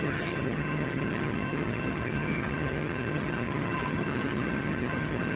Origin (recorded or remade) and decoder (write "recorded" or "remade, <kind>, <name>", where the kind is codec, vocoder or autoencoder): remade, vocoder, HiFi-GAN